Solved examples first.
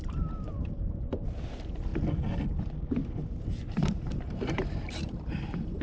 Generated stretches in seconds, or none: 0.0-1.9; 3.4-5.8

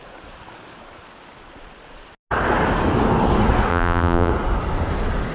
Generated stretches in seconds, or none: 3.7-4.3

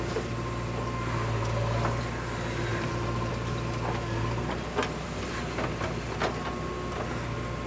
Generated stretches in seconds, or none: 2.7-3.3

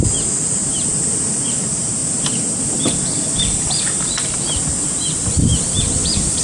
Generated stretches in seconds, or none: 0.6-1.5; 2.0-2.9

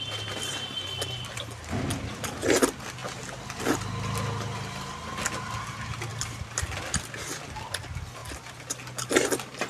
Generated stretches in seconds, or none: 8.2-9.1

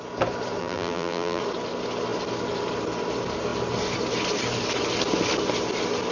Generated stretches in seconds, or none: 0.6-1.4

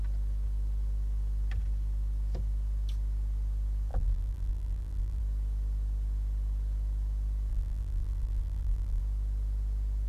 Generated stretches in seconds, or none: 3.9-5.2; 7.5-9.0